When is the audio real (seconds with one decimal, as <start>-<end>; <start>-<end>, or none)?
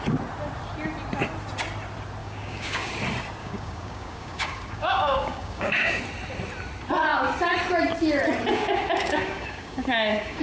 0.0-2.2; 2.9-3.4; 6.0-8.5